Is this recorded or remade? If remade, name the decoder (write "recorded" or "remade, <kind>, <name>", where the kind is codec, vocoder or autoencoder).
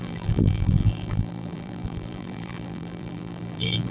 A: remade, vocoder, BigVGAN v2